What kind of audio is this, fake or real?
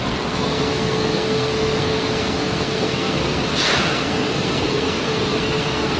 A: fake